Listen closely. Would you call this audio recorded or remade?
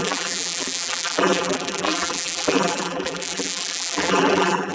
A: remade